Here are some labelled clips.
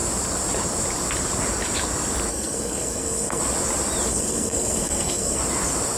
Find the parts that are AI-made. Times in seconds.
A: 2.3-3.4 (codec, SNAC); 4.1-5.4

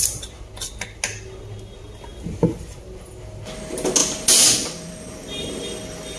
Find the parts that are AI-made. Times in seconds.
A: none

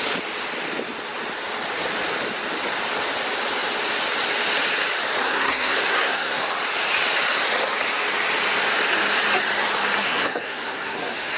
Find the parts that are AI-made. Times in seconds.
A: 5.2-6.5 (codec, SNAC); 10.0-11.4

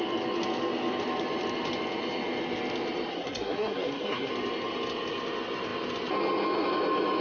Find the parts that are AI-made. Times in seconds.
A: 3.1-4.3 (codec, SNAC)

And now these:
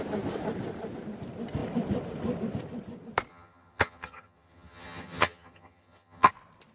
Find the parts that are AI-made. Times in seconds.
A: 3.3-6.3 (vocoder, HiFi-GAN)

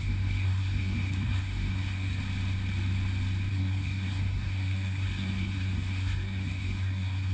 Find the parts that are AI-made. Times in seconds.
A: 0.0-2.2 (codec, SNAC); 3.5-7.3